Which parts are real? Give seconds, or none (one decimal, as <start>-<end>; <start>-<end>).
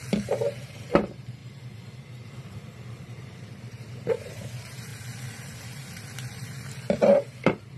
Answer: 1.4-2.4; 4.9-5.6